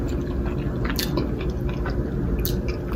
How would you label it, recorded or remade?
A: recorded